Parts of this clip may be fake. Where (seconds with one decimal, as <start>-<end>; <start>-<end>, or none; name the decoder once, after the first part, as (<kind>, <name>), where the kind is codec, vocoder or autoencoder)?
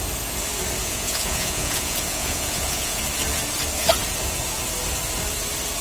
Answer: 0.8-3.0 (vocoder, Vocos)